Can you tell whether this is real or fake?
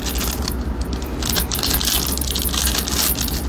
real